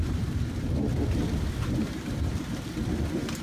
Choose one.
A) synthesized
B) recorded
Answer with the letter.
A